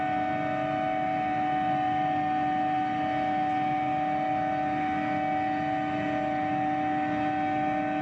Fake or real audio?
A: real